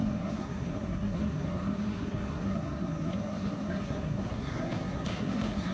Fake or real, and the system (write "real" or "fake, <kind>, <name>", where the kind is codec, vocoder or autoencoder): fake, codec, SNAC